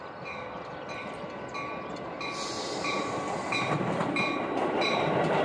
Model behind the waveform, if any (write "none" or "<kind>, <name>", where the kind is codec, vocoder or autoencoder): none